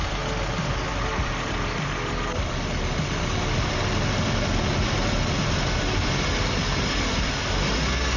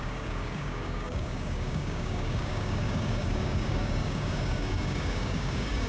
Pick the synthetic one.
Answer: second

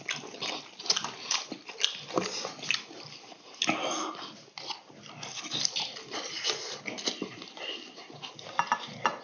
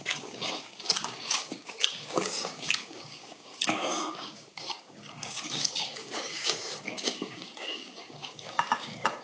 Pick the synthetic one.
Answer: second